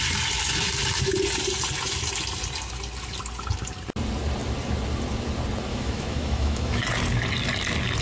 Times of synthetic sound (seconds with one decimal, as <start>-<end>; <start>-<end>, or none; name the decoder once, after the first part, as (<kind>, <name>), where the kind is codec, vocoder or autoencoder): 5.7-6.8 (autoencoder, DAC-VAE)